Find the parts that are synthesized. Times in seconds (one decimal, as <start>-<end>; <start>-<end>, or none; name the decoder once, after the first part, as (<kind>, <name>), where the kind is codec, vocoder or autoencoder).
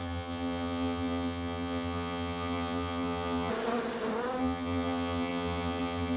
0.0-3.5 (vocoder, HiFi-GAN); 4.4-6.2